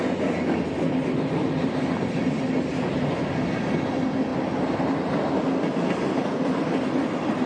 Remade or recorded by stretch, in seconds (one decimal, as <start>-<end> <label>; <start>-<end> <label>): 0.0-7.5 recorded